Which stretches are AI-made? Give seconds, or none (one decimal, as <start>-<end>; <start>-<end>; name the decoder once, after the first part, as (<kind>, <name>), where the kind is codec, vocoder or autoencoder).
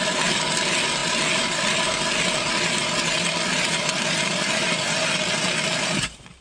none